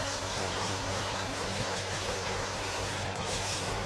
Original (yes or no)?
no